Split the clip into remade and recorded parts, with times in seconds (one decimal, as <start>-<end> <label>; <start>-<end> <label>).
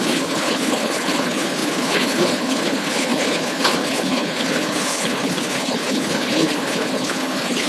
0.0-7.7 remade